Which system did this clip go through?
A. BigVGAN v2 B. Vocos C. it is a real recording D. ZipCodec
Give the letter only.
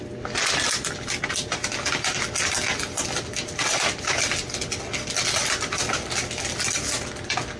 C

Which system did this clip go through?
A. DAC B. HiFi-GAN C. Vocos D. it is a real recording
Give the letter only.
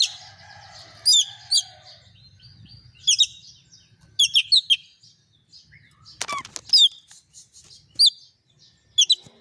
D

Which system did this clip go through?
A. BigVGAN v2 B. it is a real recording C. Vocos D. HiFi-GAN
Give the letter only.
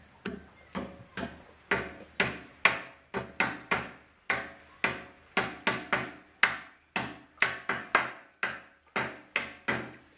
B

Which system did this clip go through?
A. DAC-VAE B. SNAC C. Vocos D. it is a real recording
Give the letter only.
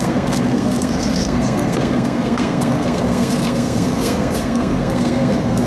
B